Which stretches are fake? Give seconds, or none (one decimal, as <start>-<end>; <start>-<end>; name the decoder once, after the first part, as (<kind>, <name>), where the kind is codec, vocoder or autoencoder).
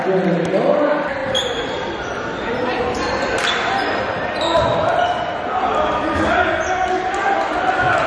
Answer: none